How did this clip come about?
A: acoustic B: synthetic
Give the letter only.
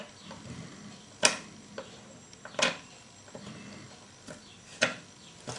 A